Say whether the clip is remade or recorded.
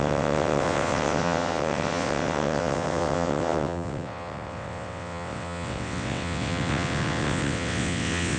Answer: remade